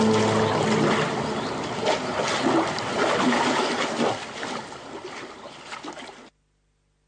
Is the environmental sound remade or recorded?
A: recorded